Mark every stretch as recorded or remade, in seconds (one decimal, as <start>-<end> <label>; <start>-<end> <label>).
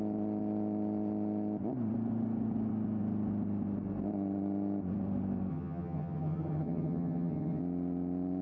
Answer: 0.0-5.5 recorded; 5.5-7.6 remade; 7.6-8.4 recorded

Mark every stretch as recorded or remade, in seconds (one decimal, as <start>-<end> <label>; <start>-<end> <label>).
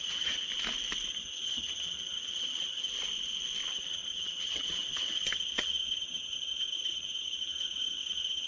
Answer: 0.0-0.5 remade; 0.5-1.1 recorded; 1.1-2.9 remade; 2.9-3.7 recorded; 3.7-8.5 remade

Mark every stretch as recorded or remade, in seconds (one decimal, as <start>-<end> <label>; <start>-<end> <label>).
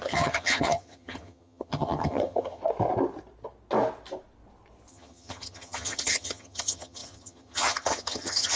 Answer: 0.0-2.6 remade; 2.6-4.9 recorded; 4.9-8.6 remade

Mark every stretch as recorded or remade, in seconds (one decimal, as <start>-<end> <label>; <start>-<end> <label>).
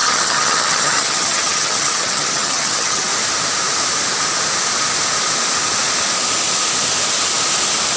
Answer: 0.0-3.1 remade; 3.1-8.0 recorded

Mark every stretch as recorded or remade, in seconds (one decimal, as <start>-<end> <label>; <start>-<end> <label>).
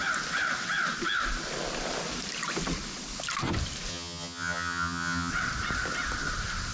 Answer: 0.0-3.9 recorded; 3.9-5.3 remade; 5.3-6.7 recorded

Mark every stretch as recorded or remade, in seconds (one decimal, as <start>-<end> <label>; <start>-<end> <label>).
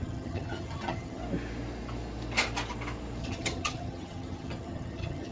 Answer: 0.0-1.2 remade; 1.2-3.2 recorded; 3.2-5.3 remade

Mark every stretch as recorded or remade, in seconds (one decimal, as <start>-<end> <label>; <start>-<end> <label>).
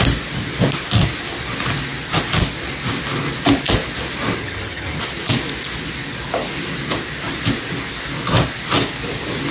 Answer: 0.0-4.4 recorded; 4.4-5.0 remade; 5.0-9.5 recorded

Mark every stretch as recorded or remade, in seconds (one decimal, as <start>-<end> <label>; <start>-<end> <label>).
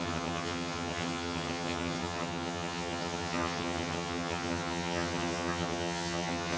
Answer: 0.0-6.6 remade